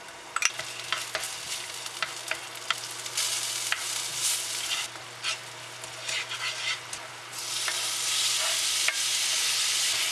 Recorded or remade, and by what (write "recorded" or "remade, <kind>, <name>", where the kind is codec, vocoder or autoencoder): recorded